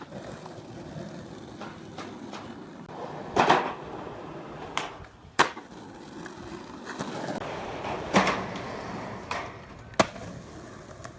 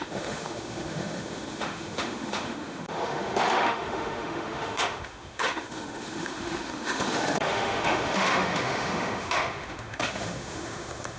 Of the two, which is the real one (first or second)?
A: first